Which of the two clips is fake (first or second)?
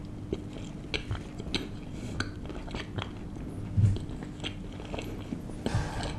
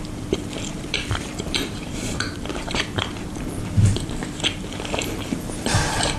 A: second